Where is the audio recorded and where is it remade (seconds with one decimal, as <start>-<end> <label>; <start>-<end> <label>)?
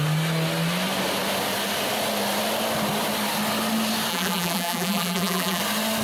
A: 0.0-4.1 recorded; 4.1-5.6 remade; 5.6-6.0 recorded